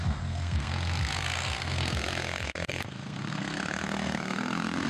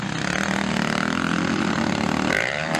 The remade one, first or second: first